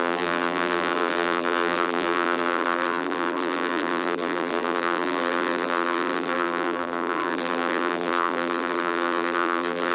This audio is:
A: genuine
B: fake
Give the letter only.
B